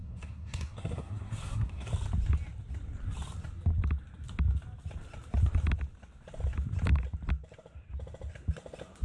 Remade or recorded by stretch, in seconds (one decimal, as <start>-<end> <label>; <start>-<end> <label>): 0.0-1.9 remade; 1.9-9.0 recorded